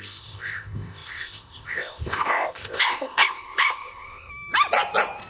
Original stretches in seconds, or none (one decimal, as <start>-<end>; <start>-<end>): 4.3-5.3